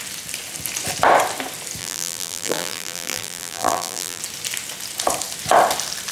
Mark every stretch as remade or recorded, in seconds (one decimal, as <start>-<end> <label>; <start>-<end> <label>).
0.0-1.8 recorded; 1.8-4.2 remade; 4.2-6.1 recorded

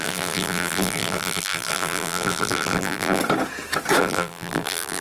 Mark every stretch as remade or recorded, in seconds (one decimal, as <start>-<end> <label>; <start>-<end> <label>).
0.0-3.2 remade; 3.2-4.0 recorded; 4.0-5.0 remade

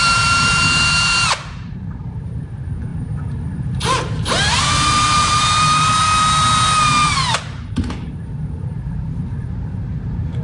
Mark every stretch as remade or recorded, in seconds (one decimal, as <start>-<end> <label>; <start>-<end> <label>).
0.0-10.4 remade